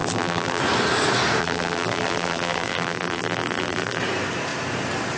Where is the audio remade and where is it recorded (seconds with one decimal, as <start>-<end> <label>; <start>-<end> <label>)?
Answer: 0.0-0.6 remade; 0.6-1.4 recorded; 1.4-4.0 remade; 4.0-5.2 recorded